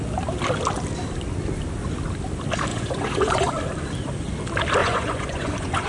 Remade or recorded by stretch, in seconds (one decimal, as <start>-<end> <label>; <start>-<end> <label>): 0.0-2.7 recorded; 2.7-3.5 remade; 3.5-4.8 recorded; 4.8-5.9 remade